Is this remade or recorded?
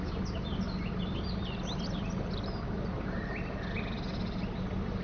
recorded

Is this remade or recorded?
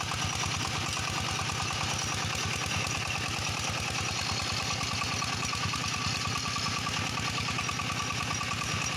recorded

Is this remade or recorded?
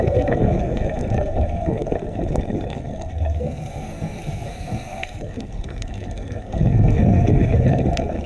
remade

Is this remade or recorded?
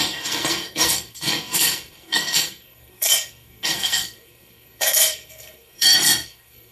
remade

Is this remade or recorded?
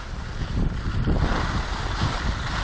recorded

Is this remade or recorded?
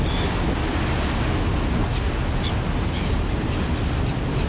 recorded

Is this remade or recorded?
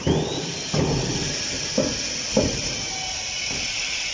recorded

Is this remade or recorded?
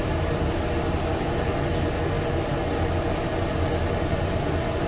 recorded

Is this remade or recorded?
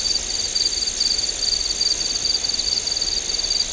recorded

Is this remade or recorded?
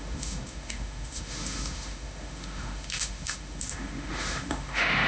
remade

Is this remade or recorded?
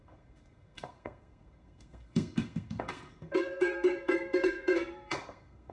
remade